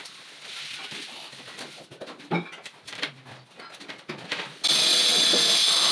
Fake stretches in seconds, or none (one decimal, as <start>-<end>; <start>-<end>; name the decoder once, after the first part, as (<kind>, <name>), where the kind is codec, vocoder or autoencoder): 4.9-5.4 (vocoder, WaveNeXt)